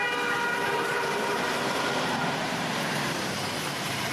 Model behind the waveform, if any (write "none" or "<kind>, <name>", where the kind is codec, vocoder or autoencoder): vocoder, BigVGAN v2